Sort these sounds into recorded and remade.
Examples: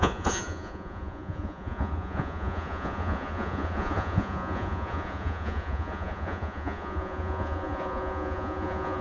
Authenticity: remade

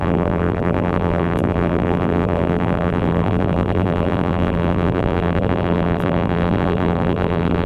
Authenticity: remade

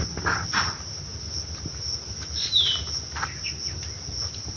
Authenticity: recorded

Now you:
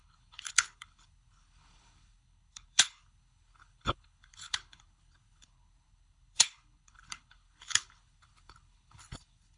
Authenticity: remade